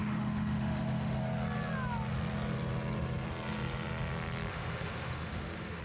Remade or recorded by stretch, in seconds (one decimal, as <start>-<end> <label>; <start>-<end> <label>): 0.0-1.2 remade; 1.2-4.5 recorded; 4.5-5.8 remade